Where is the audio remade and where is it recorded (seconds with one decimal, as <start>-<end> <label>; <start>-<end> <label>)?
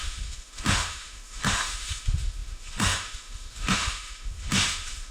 0.0-5.1 remade